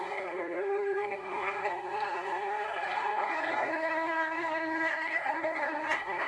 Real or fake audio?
fake